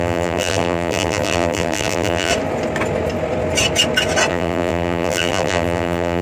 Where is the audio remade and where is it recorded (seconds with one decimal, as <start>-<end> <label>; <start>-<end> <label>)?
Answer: 0.0-2.3 remade; 2.3-4.3 recorded; 4.3-6.2 remade